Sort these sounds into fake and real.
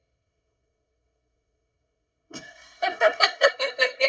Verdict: fake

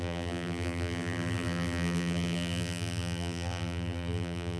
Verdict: fake